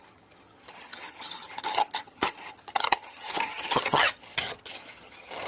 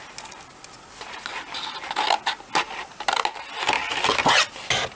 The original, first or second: second